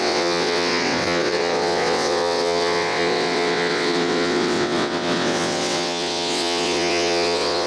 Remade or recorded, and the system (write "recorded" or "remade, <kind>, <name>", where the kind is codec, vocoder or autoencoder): remade, vocoder, WaveNeXt